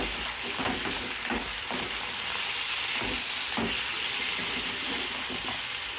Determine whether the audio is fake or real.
real